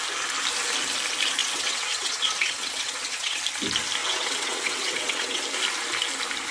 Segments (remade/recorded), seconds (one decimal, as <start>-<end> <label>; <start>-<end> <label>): 0.0-1.4 recorded; 1.4-3.4 remade; 3.4-4.0 recorded; 4.0-5.4 remade; 5.4-6.5 recorded